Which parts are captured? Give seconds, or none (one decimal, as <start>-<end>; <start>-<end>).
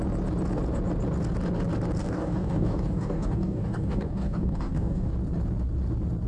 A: 0.0-2.0; 5.1-6.3